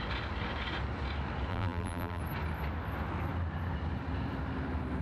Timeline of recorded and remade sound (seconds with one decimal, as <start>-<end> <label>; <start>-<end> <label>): 0.0-1.5 recorded; 1.5-2.2 remade; 2.2-5.0 recorded